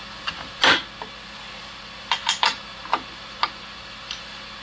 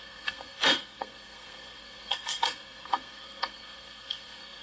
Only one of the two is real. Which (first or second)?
first